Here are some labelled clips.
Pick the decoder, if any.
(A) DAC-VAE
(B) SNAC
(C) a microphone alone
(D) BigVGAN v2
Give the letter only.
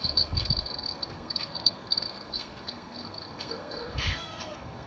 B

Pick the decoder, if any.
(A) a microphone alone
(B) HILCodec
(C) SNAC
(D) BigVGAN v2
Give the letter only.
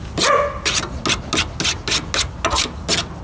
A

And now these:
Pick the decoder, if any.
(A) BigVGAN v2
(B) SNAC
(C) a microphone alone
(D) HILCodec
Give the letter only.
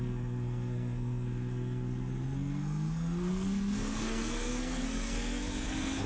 B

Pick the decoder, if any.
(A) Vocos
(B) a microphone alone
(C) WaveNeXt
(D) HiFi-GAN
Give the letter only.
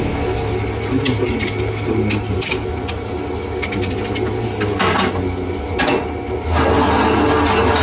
B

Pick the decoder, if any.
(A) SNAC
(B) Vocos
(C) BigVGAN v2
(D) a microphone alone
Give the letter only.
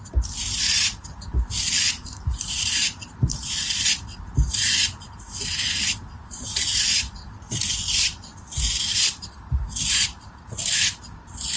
C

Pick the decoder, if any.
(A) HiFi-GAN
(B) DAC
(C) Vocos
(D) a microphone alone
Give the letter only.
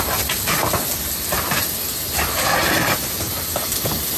D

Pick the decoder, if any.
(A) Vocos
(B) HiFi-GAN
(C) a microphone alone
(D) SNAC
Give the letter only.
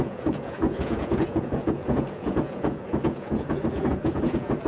A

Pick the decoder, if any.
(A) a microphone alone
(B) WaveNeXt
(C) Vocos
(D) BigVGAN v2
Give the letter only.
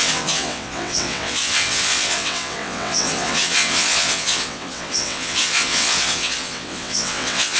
B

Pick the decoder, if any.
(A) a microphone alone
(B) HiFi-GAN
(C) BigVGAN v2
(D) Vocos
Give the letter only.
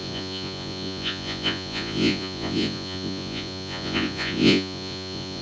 D